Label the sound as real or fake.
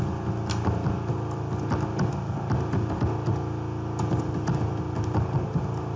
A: real